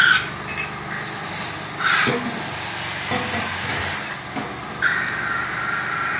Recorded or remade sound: recorded